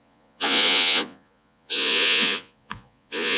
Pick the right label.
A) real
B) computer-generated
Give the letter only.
B